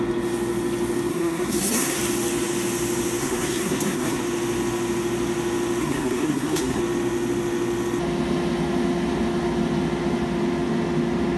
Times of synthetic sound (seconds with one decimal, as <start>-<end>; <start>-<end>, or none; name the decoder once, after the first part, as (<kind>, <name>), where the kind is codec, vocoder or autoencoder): 1.1-2.0 (codec, SNAC); 3.2-4.2; 5.8-6.8